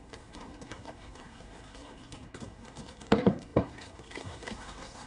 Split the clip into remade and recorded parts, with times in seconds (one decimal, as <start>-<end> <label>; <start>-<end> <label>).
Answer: 0.0-5.1 remade